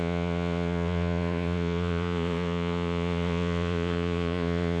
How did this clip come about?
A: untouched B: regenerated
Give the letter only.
B